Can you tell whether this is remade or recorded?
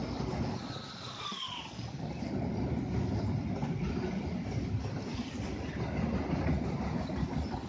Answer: recorded